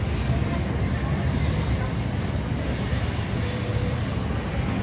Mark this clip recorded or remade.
recorded